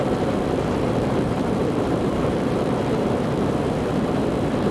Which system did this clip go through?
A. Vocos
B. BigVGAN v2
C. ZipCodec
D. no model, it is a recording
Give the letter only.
B